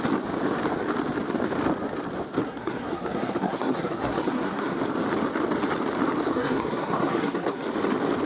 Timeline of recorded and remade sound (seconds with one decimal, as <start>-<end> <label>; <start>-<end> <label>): 0.0-2.4 recorded; 2.4-4.8 remade; 4.8-6.3 recorded; 6.3-7.7 remade; 7.7-8.3 recorded